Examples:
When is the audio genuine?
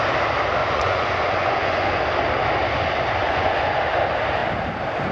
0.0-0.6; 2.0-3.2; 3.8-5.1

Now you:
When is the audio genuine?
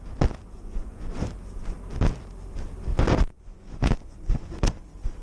0.0-0.4; 1.3-2.9; 4.7-5.2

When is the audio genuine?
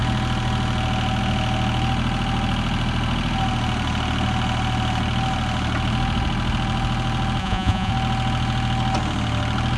0.0-7.4; 7.9-9.8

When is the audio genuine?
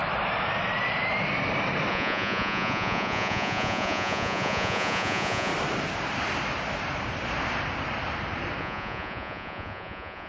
0.0-1.9; 5.5-8.6